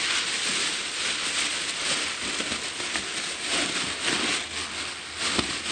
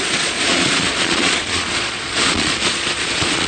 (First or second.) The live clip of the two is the first